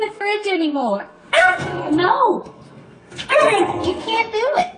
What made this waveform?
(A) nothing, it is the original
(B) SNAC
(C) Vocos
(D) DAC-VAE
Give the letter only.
B